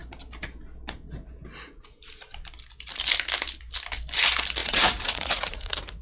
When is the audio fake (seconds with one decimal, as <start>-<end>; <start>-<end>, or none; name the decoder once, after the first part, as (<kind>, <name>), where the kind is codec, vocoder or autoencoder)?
4.6-6.0 (vocoder, Vocos)